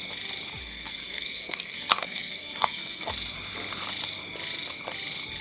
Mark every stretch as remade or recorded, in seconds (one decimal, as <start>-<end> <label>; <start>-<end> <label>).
0.0-0.6 recorded; 0.6-3.1 remade; 3.1-5.4 recorded